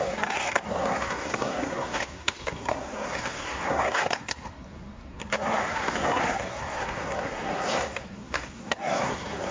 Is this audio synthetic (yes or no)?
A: yes